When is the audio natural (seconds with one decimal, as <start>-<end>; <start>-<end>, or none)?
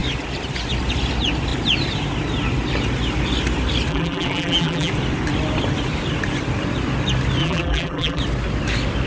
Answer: 0.0-3.9; 4.9-7.4; 8.2-9.1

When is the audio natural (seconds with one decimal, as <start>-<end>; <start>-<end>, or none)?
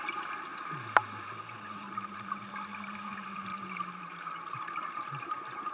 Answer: 0.0-5.7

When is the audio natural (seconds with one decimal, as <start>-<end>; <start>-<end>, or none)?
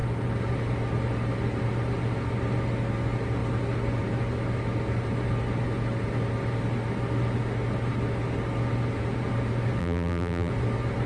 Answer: 0.0-9.8; 10.5-11.1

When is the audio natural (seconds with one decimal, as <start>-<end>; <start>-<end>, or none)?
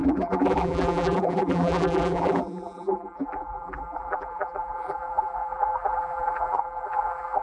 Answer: none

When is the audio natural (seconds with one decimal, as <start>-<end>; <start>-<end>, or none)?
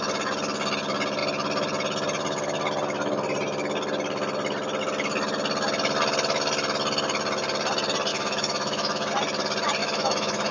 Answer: 0.0-8.1; 9.1-9.8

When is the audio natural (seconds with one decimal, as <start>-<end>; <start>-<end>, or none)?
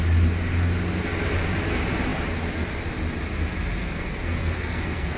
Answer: 0.0-3.8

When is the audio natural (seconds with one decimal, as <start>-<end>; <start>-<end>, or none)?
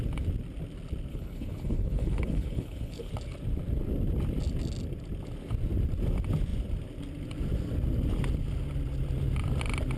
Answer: 0.0-1.1; 3.1-10.0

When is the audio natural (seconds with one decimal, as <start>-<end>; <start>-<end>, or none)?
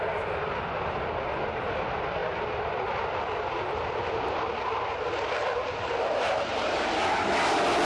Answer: 0.0-7.8